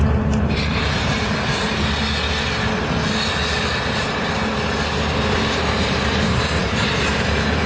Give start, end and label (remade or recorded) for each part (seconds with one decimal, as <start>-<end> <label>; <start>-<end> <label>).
0.0-1.7 remade; 1.7-5.8 recorded; 5.8-7.7 remade